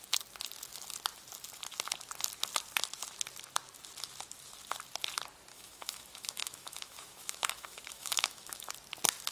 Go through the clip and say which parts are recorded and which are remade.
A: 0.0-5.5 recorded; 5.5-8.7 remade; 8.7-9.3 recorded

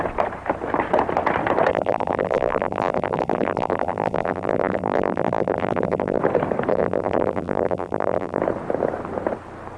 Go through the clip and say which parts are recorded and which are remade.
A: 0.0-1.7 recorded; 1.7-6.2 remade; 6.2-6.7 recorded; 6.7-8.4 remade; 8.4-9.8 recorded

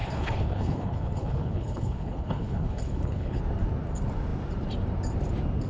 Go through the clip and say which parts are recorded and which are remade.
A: 0.0-3.4 remade; 3.4-5.7 recorded

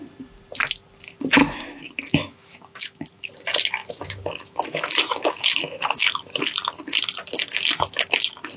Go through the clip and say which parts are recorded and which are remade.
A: 0.0-1.4 recorded; 1.4-3.3 remade; 3.3-3.8 recorded; 3.8-6.4 remade; 6.4-8.6 recorded

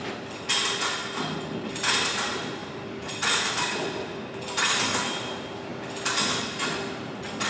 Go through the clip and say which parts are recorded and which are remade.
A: 0.0-2.6 recorded; 2.6-3.5 remade; 3.5-7.5 recorded

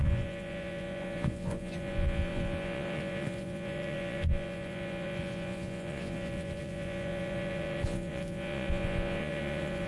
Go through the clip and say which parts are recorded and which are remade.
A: 0.0-9.9 remade